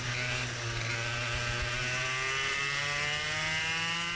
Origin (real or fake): real